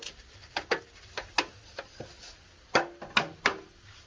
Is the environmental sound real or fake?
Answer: real